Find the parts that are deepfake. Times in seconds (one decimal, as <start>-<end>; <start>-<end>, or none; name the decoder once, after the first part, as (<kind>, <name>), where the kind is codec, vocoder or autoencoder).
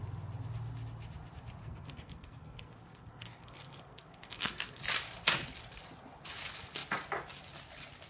1.6-4.8 (codec, SNAC)